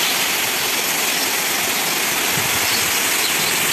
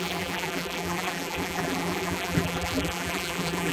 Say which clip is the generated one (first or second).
second